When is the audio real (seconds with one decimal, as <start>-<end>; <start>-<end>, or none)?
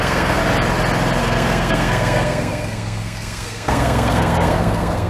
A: 0.4-1.2